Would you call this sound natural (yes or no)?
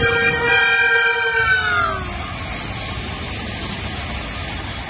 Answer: yes